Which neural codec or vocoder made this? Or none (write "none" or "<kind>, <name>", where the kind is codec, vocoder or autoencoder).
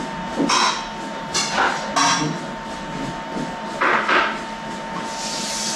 none